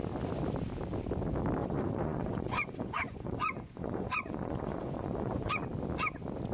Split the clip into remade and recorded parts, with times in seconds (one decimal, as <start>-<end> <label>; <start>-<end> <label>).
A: 0.0-1.6 recorded; 1.6-5.5 remade; 5.5-6.5 recorded